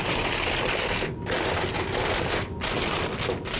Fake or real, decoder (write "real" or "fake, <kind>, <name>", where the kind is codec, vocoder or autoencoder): real